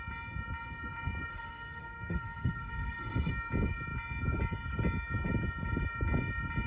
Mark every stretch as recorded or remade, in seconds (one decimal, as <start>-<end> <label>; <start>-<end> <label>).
0.0-1.3 recorded; 1.3-3.3 remade; 3.3-6.7 recorded